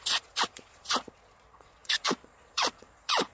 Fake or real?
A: fake